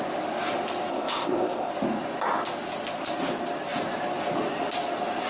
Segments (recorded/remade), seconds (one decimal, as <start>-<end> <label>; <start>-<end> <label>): 0.0-0.9 recorded; 0.9-1.7 remade; 1.7-5.3 recorded